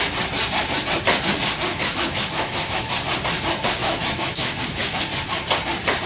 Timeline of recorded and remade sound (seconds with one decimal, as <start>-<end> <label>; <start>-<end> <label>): 0.0-1.7 recorded; 1.7-2.9 remade; 2.9-3.8 recorded; 3.8-5.0 remade; 5.0-6.1 recorded